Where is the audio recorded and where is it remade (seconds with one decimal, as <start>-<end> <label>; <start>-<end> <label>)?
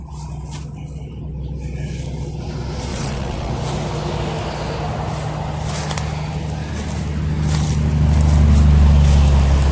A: 0.0-2.9 recorded; 2.9-3.5 remade; 3.5-9.7 recorded